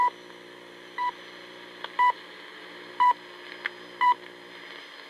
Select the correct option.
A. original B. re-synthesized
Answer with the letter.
A